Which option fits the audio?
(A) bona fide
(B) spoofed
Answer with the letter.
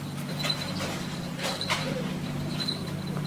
B